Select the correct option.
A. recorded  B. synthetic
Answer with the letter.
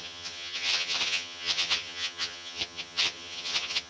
B